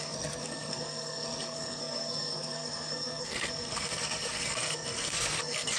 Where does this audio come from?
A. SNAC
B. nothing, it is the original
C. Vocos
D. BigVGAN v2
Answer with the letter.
A